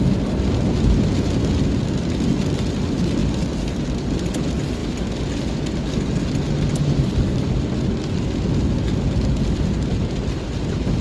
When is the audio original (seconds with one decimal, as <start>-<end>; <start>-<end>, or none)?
0.0-11.0